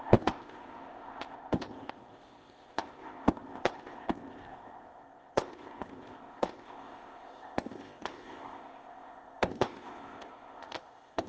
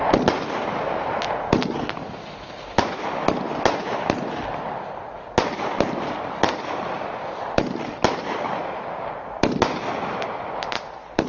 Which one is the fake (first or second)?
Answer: first